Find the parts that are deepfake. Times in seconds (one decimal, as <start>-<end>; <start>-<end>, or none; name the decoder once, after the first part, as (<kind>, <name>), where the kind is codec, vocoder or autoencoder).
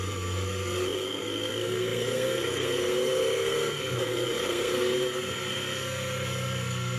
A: 0.0-7.0 (codec, SNAC)